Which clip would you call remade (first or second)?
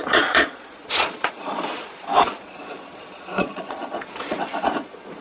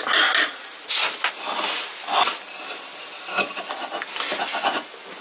first